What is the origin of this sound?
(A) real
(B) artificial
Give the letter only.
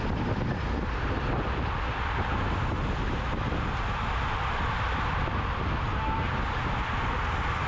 A